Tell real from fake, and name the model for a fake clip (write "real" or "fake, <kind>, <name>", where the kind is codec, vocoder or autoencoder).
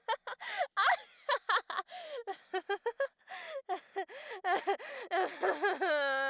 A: real